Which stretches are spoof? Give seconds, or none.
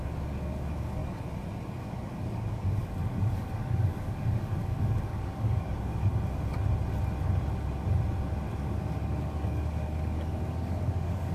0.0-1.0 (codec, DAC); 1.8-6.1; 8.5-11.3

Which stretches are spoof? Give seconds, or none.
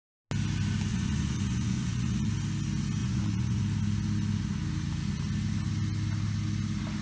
0.9-2.3 (vocoder, Vocos); 3.0-3.6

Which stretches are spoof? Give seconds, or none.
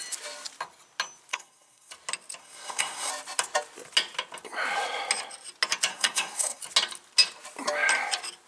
1.3-1.9 (codec, SNAC); 2.4-3.1; 5.9-6.6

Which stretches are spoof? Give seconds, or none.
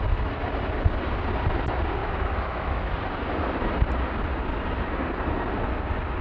2.0-2.9 (autoencoder, DAC-VAE)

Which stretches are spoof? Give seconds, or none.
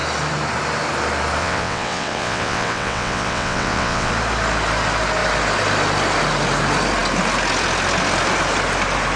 1.4-4.1 (vocoder, WaveNeXt)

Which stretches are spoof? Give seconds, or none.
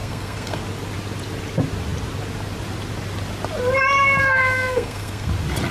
0.0-0.6 (codec, SNAC); 4.2-5.3